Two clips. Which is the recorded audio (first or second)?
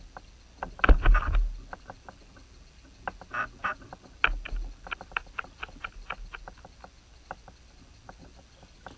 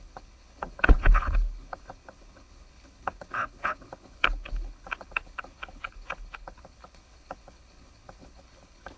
first